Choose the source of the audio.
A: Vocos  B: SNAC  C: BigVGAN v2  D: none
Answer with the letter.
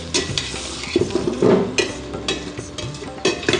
D